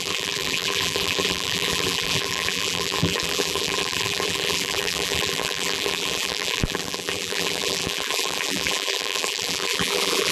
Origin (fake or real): fake